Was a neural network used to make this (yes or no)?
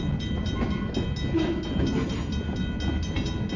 no